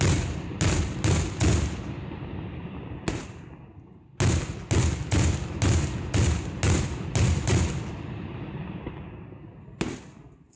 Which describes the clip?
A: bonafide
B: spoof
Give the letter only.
A